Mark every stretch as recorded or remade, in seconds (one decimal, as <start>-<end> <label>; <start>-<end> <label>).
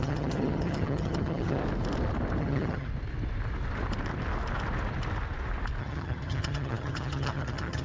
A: 0.0-1.6 remade; 1.6-2.4 recorded; 2.4-2.9 remade; 2.9-5.8 recorded; 5.8-7.8 remade